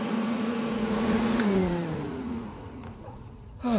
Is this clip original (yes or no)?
no